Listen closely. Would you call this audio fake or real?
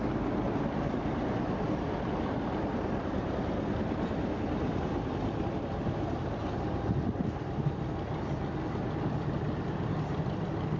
real